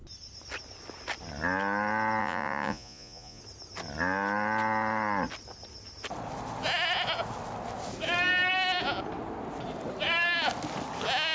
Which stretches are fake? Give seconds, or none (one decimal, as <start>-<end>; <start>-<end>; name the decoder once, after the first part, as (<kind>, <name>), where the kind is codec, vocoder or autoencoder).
2.2-3.4 (vocoder, Vocos)